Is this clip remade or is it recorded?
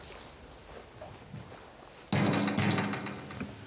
recorded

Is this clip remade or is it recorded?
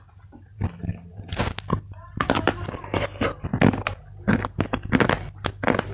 recorded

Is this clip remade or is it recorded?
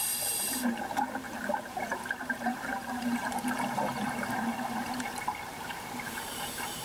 remade